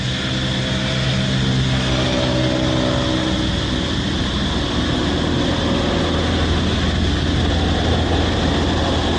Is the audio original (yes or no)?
yes